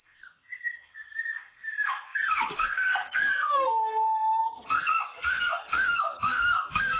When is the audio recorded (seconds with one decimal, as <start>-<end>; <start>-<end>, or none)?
none